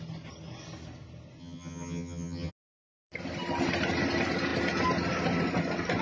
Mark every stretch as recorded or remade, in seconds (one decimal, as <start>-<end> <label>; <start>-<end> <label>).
0.0-1.4 recorded; 1.4-2.5 remade; 2.5-6.0 recorded